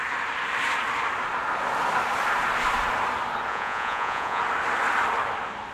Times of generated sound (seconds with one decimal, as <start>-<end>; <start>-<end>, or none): 3.5-4.4

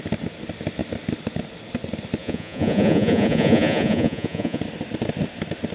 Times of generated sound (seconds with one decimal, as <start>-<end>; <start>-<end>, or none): 2.2-4.6

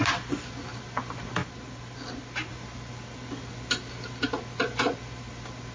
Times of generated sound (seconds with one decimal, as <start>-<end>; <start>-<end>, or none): none

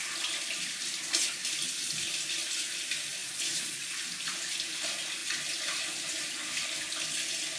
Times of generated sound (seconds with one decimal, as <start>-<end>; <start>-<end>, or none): 3.2-3.9

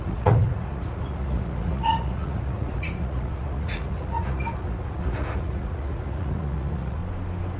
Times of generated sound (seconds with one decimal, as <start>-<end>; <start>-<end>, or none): 0.0-7.0